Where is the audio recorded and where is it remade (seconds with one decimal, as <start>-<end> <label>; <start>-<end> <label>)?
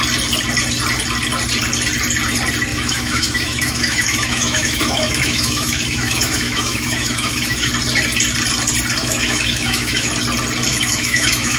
0.0-2.7 recorded; 2.7-7.7 remade; 7.7-9.0 recorded; 9.0-10.1 remade; 10.1-10.7 recorded; 10.7-11.6 remade